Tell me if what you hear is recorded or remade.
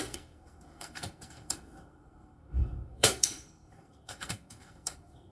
remade